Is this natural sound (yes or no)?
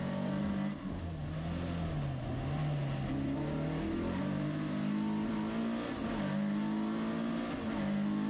yes